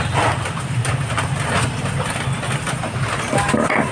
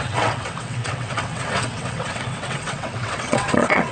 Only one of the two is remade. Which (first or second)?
second